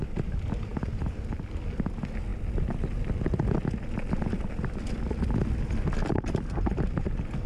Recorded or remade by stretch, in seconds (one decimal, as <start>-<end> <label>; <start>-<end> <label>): 0.0-7.5 recorded